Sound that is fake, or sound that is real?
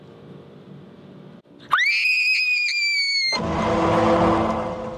real